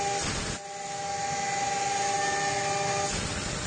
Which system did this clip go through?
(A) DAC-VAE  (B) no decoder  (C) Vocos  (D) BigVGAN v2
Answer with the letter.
B